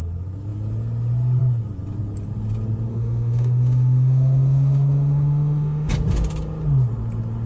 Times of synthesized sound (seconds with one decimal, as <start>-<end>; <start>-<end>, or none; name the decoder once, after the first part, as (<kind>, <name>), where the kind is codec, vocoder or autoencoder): 2.9-5.9 (autoencoder, DAC-VAE)